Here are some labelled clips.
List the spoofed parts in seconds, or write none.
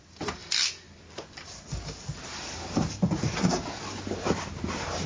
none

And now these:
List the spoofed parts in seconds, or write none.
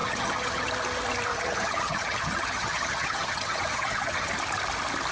0.0-0.7 (vocoder, HiFi-GAN); 1.3-4.3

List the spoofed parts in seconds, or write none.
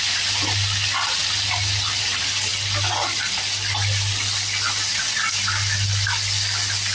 none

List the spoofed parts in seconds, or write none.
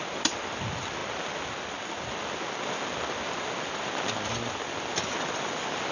none